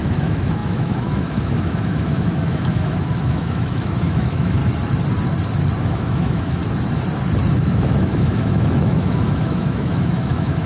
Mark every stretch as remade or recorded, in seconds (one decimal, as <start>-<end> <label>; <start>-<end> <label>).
0.0-4.6 remade; 4.6-5.8 recorded; 5.8-6.6 remade; 6.6-7.6 recorded; 7.6-10.7 remade